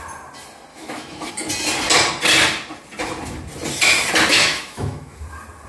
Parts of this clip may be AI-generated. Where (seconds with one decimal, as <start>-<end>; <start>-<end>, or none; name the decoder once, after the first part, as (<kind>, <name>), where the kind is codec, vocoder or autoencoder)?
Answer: 0.7-1.3 (autoencoder, DAC-VAE); 4.3-5.2